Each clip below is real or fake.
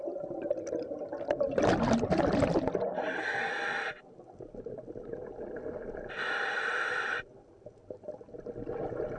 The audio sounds real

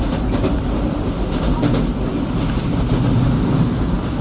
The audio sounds real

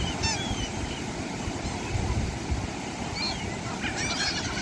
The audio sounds real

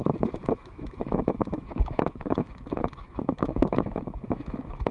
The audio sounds fake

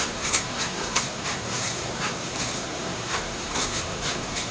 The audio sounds fake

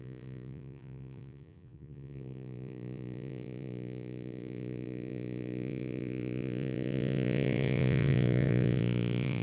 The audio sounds fake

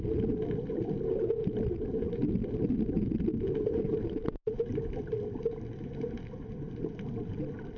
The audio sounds real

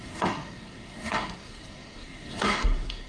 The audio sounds fake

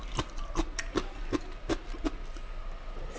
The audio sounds real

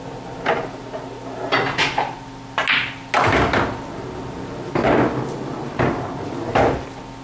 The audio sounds real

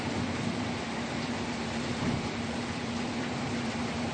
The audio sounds fake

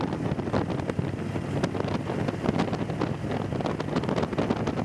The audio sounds real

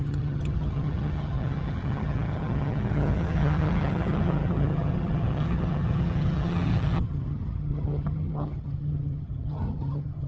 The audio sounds fake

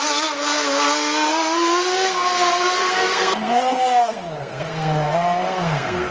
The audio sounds fake